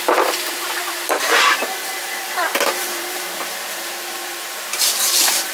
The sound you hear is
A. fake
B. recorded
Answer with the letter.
A